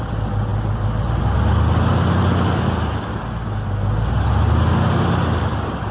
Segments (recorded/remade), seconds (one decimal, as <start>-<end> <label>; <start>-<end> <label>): 0.0-5.9 recorded